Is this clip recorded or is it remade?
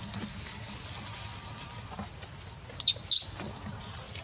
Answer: recorded